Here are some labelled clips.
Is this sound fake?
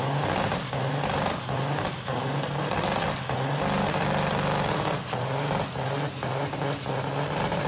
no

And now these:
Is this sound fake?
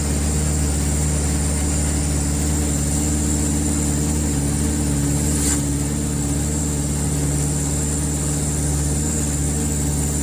no